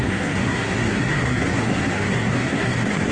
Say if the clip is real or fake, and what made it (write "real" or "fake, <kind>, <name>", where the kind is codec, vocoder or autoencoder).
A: fake, codec, SNAC